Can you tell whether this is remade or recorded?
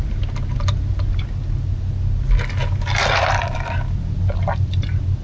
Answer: recorded